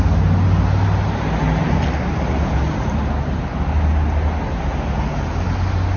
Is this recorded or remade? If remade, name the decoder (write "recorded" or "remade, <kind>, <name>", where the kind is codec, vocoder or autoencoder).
recorded